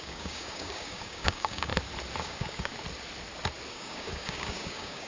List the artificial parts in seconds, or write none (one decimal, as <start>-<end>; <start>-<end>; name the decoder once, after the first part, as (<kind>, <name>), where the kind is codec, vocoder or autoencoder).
0.0-1.7 (codec, DAC); 2.2-2.7; 3.7-5.1